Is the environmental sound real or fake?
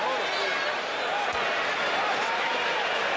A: real